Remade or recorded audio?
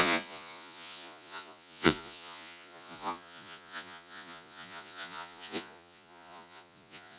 remade